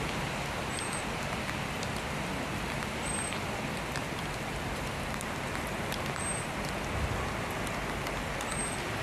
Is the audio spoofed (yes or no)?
no